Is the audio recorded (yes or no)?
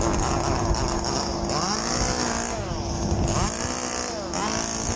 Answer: yes